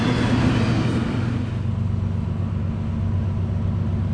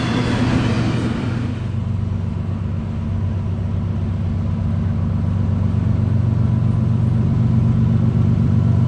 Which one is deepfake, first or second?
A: second